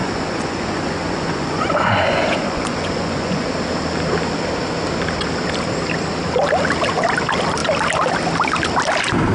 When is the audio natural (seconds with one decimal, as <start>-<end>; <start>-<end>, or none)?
3.5-9.3

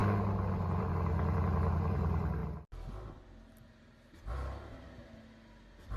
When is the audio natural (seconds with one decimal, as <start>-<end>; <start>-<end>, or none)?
0.0-0.8; 2.4-6.0

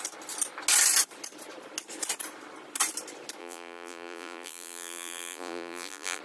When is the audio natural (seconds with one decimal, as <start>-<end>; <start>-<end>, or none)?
0.0-3.4

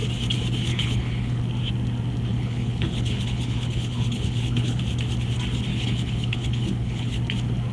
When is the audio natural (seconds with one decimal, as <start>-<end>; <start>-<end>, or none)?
0.0-0.7; 1.4-2.3; 4.8-5.7; 7.2-7.7